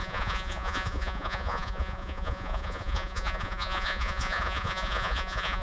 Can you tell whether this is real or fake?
fake